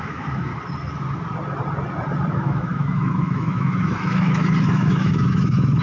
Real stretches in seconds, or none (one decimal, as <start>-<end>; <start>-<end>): 0.5-2.3